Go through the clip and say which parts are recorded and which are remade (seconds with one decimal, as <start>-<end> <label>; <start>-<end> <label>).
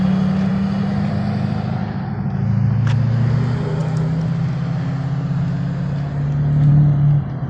0.0-7.5 recorded